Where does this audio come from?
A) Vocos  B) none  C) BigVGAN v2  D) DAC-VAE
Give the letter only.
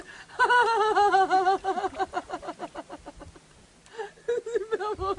B